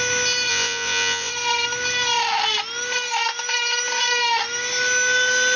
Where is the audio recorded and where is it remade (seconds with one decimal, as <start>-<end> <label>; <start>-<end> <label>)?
0.0-0.5 recorded; 0.5-1.3 remade; 1.3-5.6 recorded